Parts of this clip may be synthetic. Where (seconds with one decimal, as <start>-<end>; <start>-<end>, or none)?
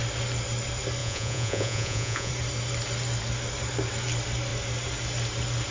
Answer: 1.0-2.3